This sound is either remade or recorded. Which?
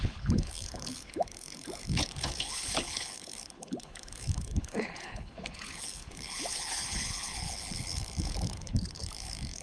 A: remade